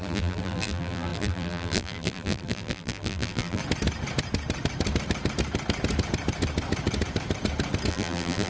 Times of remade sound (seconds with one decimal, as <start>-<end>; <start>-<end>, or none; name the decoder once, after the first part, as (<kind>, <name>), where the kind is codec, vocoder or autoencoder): 0.0-3.6 (vocoder, BigVGAN v2); 7.9-8.5